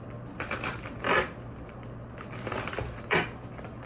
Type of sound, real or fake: real